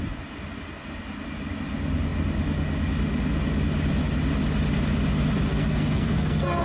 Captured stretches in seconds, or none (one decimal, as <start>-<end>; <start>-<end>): 0.0-5.5